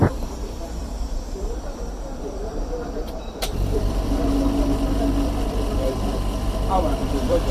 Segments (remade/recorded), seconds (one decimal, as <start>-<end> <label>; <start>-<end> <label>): 0.0-7.5 remade